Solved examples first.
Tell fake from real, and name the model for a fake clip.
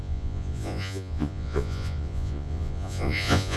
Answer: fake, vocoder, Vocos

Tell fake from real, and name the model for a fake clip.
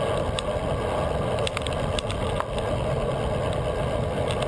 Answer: real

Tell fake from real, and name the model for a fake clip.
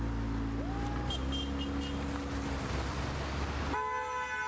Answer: real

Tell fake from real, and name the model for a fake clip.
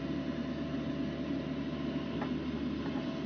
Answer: real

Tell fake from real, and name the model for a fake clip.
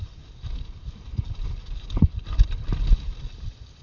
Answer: real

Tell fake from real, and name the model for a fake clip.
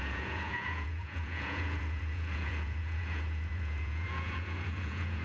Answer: fake, vocoder, Vocos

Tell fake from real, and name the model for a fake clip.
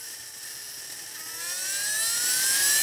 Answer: real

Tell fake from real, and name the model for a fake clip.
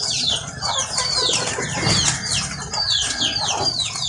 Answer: real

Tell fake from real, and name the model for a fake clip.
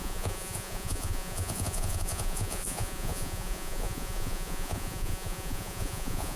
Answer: fake, vocoder, Vocos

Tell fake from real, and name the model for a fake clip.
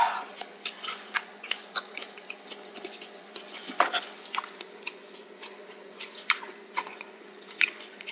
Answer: fake, vocoder, Vocos